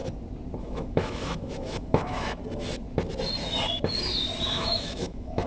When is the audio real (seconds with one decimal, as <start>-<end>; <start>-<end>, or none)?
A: 0.0-0.6; 2.4-4.4